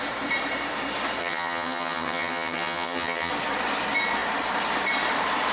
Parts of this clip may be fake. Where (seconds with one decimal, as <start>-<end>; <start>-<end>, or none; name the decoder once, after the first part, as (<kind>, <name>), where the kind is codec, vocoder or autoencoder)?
1.2-3.3 (vocoder, HiFi-GAN)